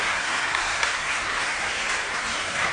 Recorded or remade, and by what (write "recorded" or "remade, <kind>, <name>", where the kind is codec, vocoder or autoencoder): remade, codec, SNAC